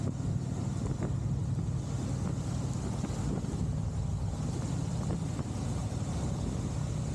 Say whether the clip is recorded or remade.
recorded